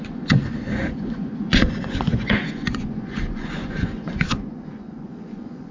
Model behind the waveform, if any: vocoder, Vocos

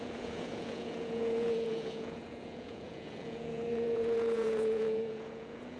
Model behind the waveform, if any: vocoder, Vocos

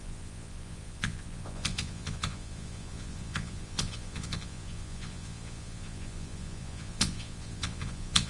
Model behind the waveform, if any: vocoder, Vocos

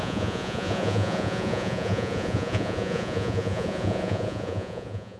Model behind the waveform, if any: vocoder, Vocos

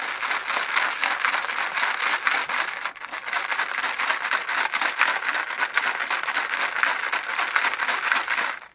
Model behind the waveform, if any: none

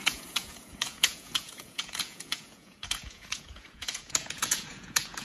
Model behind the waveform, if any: vocoder, Vocos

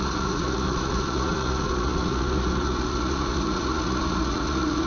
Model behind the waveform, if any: vocoder, Vocos